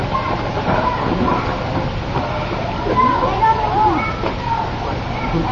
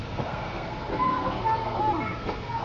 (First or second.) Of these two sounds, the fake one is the second